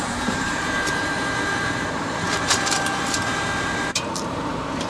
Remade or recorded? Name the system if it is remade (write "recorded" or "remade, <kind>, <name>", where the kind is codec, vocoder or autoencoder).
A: remade, vocoder, BigVGAN v2